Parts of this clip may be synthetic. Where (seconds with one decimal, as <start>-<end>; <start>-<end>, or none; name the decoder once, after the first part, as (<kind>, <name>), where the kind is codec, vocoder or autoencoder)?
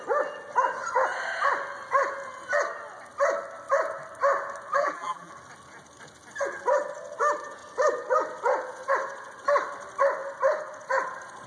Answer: 4.8-5.3 (vocoder, BigVGAN v2)